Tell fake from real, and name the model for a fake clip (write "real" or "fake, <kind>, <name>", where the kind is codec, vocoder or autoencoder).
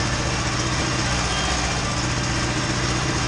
real